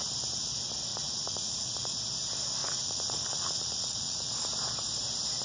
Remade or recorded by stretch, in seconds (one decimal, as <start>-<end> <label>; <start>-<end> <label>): 0.0-0.9 recorded; 0.9-2.0 remade; 2.0-2.6 recorded; 2.6-4.3 remade; 4.3-5.4 recorded